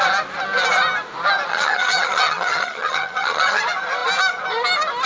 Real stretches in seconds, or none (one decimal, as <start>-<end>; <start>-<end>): 0.0-1.5; 3.6-5.1

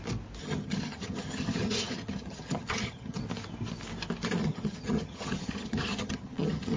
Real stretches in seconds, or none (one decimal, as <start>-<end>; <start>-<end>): 0.0-0.4; 3.2-4.4